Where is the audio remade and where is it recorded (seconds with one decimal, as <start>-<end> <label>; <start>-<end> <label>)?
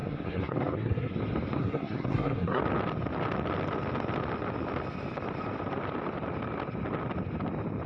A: 0.0-1.2 remade; 1.2-1.6 recorded; 1.6-2.6 remade; 2.6-7.9 recorded